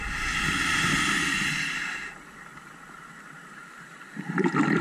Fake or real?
real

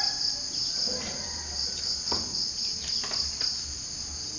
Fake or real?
real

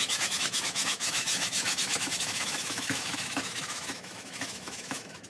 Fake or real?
fake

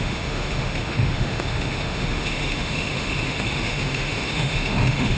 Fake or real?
fake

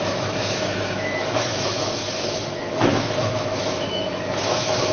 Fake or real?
fake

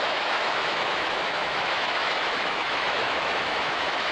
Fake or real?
fake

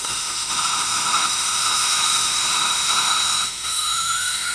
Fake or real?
fake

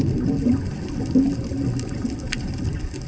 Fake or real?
real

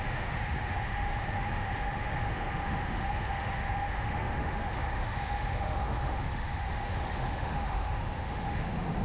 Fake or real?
fake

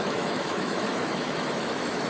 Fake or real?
fake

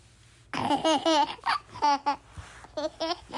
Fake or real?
real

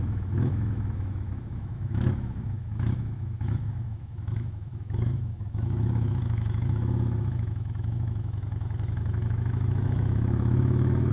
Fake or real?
fake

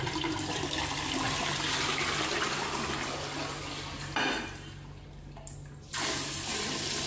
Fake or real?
real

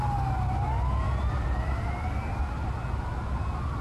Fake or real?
real